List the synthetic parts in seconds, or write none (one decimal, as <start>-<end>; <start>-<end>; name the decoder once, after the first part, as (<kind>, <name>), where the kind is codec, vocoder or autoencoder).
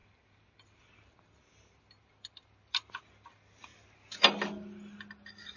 0.0-3.0 (vocoder, BigVGAN v2); 3.7-4.2